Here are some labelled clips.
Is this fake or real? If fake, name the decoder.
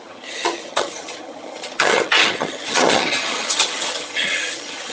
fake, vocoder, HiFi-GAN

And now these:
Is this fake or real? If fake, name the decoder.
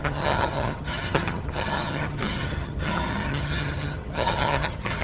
fake, vocoder, HiFi-GAN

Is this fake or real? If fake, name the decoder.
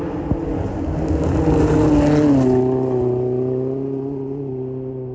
real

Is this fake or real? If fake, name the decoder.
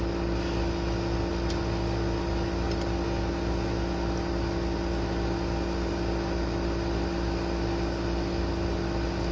real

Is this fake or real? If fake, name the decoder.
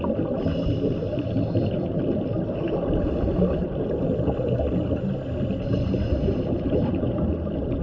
real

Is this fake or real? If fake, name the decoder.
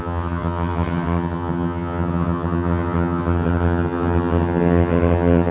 fake, vocoder, HiFi-GAN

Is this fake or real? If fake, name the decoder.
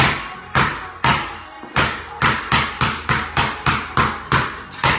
real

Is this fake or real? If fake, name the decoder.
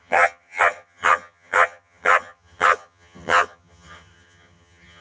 fake, vocoder, HiFi-GAN